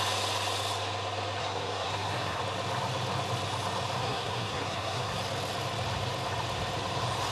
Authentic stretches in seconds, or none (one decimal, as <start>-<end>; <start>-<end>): 0.0-1.4; 2.4-4.0; 5.2-7.3